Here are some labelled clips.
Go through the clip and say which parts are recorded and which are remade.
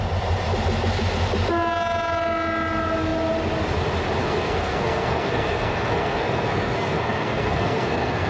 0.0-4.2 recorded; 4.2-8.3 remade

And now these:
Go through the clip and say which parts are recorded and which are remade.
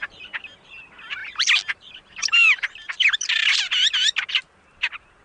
0.0-1.2 recorded; 1.2-4.3 remade; 4.3-5.2 recorded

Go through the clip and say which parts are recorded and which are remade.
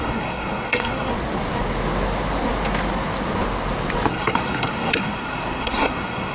0.0-1.1 remade; 1.1-4.1 recorded; 4.1-6.3 remade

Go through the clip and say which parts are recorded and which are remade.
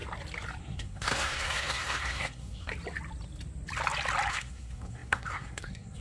0.0-0.6 recorded; 0.6-2.7 remade; 2.7-4.3 recorded; 4.3-6.0 remade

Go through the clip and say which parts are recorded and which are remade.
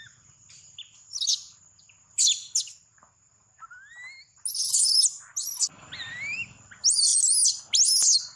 0.0-8.4 recorded